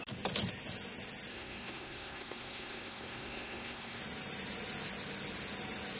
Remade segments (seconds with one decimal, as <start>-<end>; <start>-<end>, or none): 1.3-4.0